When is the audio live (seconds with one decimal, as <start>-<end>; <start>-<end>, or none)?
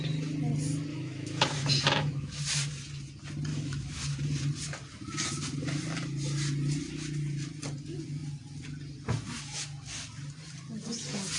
0.0-0.9; 2.4-3.5; 4.0-11.4